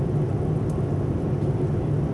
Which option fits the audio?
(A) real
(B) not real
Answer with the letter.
A